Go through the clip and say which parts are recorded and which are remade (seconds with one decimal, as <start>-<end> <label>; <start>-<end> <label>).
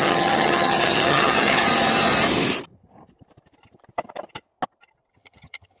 0.0-1.6 remade; 1.6-5.1 recorded; 5.1-5.8 remade